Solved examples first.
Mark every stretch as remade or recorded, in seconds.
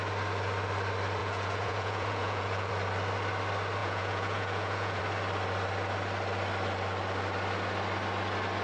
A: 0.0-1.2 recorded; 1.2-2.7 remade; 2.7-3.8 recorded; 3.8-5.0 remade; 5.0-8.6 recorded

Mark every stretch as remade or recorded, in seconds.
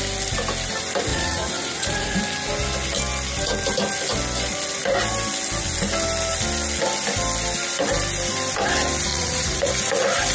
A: 0.0-1.1 recorded; 1.1-2.2 remade; 2.2-9.1 recorded; 9.1-9.7 remade; 9.7-10.3 recorded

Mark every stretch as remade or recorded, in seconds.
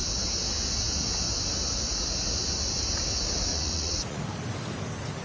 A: 0.0-3.5 recorded; 3.5-4.2 remade; 4.2-5.2 recorded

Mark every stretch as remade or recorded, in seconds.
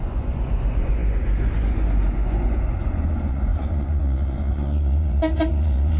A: 0.0-6.0 remade